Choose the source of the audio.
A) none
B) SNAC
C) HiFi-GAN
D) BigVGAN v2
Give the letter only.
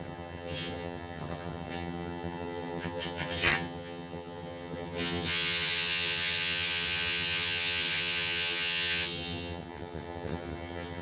C